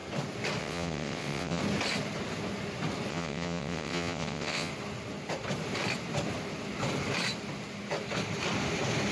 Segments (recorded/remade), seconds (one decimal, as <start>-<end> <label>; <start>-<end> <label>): 0.0-0.6 recorded; 0.6-1.6 remade; 1.6-3.1 recorded; 3.1-4.7 remade; 4.7-9.1 recorded